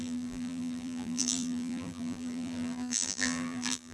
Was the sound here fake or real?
fake